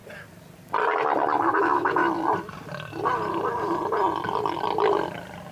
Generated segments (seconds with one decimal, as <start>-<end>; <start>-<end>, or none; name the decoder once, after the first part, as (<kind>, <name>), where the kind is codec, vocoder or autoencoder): 1.6-2.0 (autoencoder, DAC-VAE)